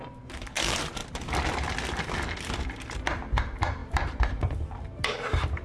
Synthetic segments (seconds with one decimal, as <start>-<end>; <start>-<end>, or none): 0.0-1.0; 3.4-5.6